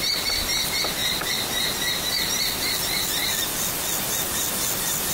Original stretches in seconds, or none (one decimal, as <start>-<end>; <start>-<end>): none